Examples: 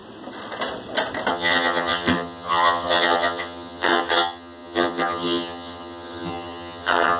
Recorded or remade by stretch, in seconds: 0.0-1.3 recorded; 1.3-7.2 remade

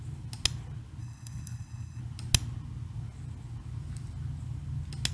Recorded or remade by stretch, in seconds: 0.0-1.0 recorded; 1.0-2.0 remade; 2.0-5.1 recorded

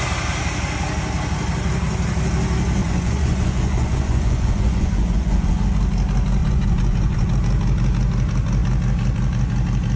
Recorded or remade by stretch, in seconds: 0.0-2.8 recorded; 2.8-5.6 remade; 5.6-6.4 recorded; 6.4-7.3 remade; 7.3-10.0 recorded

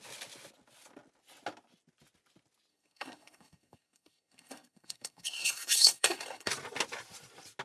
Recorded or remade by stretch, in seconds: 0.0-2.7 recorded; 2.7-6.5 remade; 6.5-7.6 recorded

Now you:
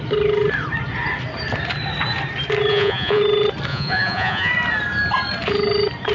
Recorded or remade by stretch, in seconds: 0.0-2.7 recorded; 2.7-3.2 remade; 3.2-3.7 recorded; 3.7-4.5 remade; 4.5-6.1 recorded

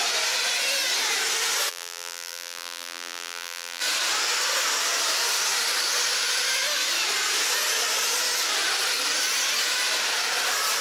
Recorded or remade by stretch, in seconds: 0.0-1.7 recorded; 1.7-3.8 remade; 3.8-10.8 recorded

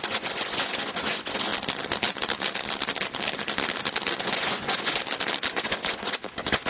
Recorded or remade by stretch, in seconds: 0.0-1.5 remade; 1.5-4.2 recorded; 4.2-5.0 remade; 5.0-5.5 recorded; 5.5-6.7 remade